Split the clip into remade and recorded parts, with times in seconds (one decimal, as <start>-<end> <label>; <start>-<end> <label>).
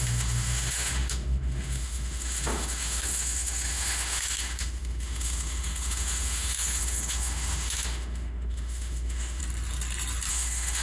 0.0-9.4 remade; 9.4-10.3 recorded; 10.3-10.8 remade